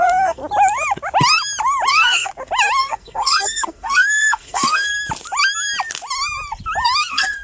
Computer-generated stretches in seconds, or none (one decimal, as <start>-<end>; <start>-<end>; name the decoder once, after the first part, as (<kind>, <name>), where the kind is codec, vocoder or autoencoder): 0.0-0.4 (codec, SNAC); 1.9-2.3; 2.8-4.9; 7.0-7.4